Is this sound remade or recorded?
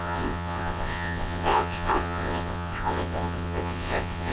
remade